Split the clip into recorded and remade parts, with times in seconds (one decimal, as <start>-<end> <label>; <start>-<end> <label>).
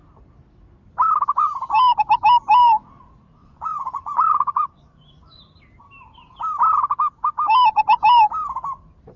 0.0-3.4 recorded; 3.4-5.4 remade; 5.4-9.2 recorded